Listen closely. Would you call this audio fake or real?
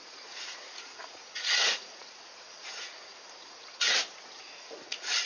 fake